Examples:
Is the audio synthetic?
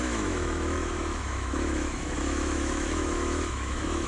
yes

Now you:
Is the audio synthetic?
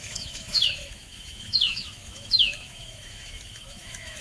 yes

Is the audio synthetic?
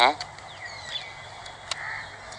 no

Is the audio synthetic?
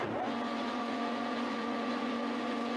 yes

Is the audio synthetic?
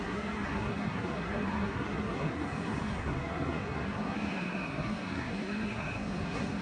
yes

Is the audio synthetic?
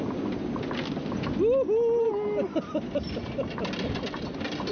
no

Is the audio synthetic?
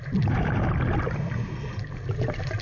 no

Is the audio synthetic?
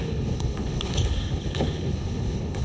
yes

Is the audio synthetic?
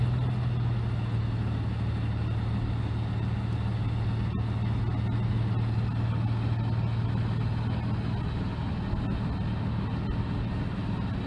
no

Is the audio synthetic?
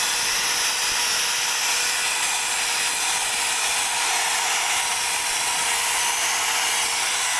no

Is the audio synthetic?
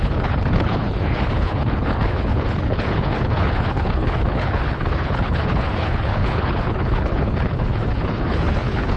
yes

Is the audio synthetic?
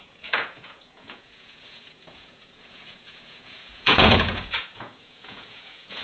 yes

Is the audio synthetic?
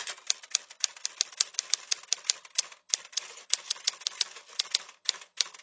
no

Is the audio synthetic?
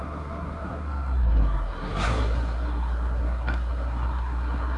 yes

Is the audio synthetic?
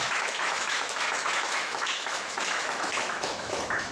yes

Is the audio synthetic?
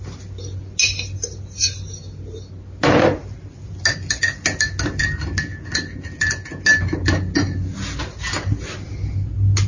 no